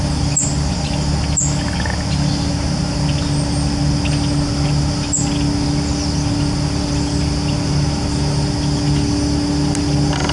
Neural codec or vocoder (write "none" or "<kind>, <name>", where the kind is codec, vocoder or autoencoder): none